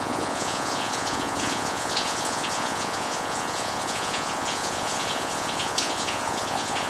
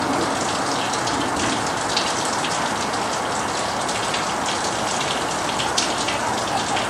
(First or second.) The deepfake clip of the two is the first